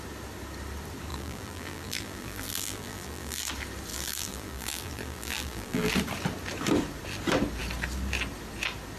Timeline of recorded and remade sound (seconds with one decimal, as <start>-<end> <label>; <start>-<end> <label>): 0.0-1.1 recorded; 1.1-3.5 remade; 3.5-3.9 recorded; 3.9-5.9 remade; 5.9-9.0 recorded